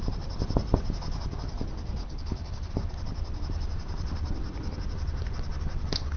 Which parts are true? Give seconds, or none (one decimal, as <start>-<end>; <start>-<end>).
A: 0.0-2.0; 2.7-6.2